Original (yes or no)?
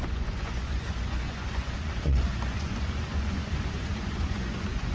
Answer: no